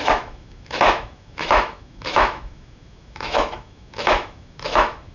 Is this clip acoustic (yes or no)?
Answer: no